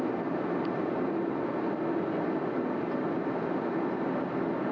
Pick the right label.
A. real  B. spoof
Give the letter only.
A